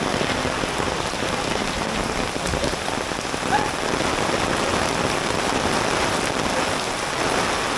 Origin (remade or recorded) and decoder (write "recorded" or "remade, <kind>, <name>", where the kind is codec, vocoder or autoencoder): recorded